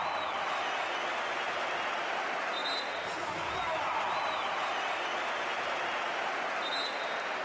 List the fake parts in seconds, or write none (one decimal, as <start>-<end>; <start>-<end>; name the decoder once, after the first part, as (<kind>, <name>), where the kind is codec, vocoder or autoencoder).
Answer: none